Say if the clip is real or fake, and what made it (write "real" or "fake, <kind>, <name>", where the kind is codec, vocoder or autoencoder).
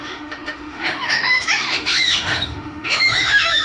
fake, autoencoder, DAC-VAE